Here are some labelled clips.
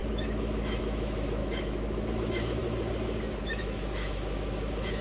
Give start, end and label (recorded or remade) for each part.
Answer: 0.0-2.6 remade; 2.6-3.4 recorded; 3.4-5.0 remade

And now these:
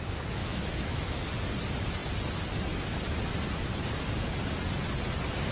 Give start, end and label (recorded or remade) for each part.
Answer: 0.0-0.4 recorded; 0.4-1.3 remade; 1.3-5.5 recorded

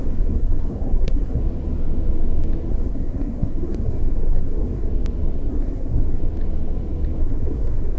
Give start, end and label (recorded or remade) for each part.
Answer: 0.0-1.4 remade; 1.4-2.7 recorded; 2.7-4.9 remade; 4.9-5.5 recorded; 5.5-6.2 remade; 6.2-7.2 recorded; 7.2-8.0 remade

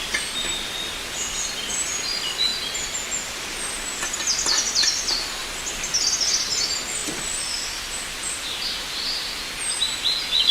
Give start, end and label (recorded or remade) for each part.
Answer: 0.0-7.0 recorded; 7.0-8.6 remade; 8.6-10.5 recorded

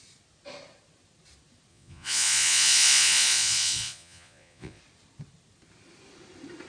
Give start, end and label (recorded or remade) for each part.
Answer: 0.0-1.7 recorded; 1.7-4.8 remade; 4.8-6.7 recorded

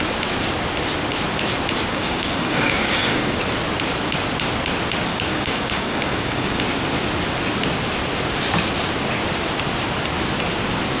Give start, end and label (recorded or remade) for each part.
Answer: 0.0-1.9 recorded; 1.9-3.4 remade; 3.4-5.1 recorded; 5.1-6.6 remade; 6.6-11.0 recorded